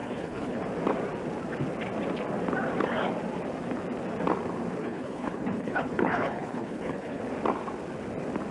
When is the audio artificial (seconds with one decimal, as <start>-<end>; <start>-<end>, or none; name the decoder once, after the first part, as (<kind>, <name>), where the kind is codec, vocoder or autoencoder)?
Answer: 0.0-0.6 (codec, HILCodec); 4.8-7.2